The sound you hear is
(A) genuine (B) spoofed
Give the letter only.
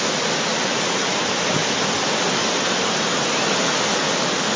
A